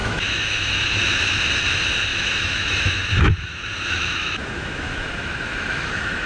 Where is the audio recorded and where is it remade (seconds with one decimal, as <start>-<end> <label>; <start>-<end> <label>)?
0.0-1.2 remade; 1.2-2.1 recorded; 2.1-6.3 remade